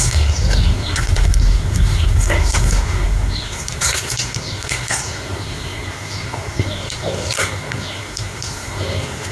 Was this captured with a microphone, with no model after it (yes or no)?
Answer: no